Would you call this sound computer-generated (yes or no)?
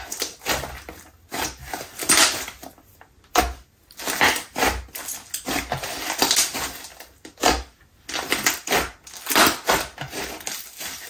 no